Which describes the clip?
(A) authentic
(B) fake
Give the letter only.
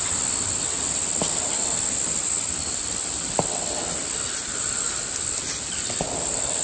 A